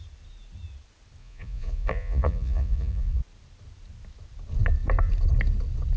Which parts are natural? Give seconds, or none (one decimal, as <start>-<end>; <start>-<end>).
0.0-1.2; 3.2-6.0

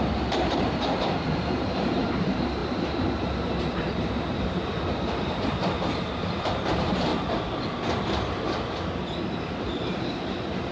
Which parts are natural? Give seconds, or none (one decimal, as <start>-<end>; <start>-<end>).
2.6-4.4; 7.1-9.7

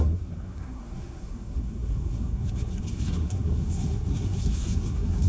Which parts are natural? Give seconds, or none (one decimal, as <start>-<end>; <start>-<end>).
none

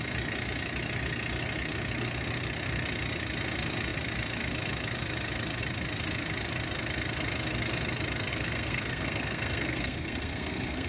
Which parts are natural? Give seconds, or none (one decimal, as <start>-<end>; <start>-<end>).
0.0-8.3

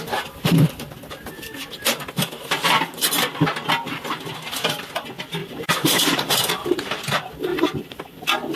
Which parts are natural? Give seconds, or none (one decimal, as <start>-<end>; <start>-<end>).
0.0-5.4; 6.5-7.5; 8.2-8.6

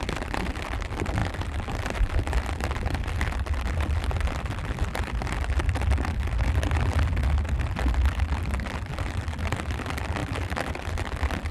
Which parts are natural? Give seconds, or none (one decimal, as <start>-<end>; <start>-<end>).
0.0-11.5